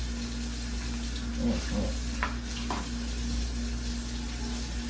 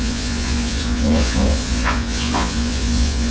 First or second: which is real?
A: first